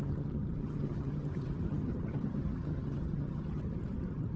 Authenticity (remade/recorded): remade